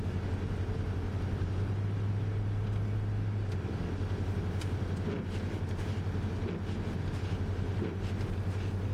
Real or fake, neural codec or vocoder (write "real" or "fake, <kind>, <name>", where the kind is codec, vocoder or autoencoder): real